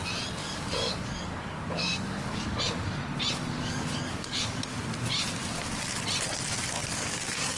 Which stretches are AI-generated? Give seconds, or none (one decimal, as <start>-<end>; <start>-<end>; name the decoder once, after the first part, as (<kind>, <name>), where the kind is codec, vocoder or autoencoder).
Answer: 0.4-2.6 (codec, DAC); 3.4-4.6; 6.8-7.6